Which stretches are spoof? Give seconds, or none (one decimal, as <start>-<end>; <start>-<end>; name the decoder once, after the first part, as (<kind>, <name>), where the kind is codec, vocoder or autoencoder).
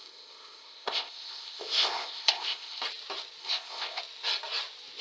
0.0-2.8 (codec, ZipCodec); 3.4-4.0